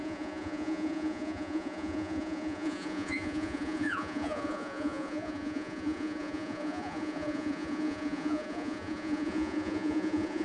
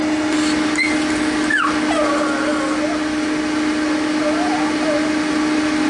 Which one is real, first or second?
second